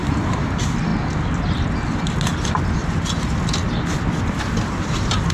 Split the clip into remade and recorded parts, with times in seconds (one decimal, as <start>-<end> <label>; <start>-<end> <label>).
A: 0.0-0.5 remade; 0.5-5.3 recorded